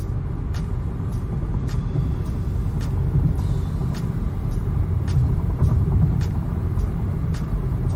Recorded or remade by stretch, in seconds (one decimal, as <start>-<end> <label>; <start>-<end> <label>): 0.0-1.1 recorded; 1.1-2.3 remade; 2.3-3.8 recorded; 3.8-8.0 remade